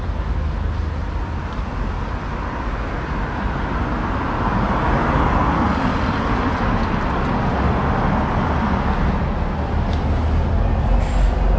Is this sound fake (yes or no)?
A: no